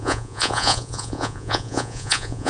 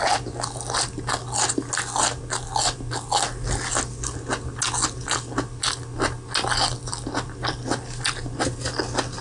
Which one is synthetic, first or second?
first